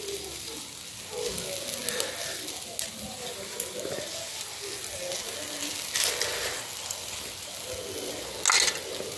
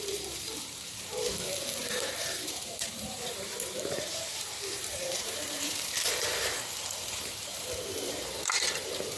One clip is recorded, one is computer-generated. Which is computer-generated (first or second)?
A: second